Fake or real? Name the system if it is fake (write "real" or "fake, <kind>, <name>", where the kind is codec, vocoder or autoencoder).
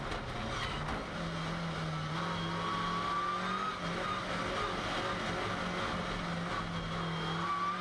real